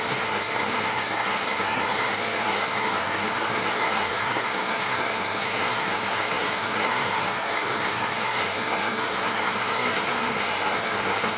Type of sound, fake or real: fake